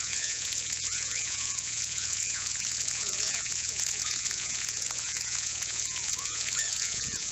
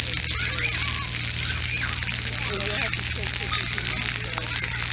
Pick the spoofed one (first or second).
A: first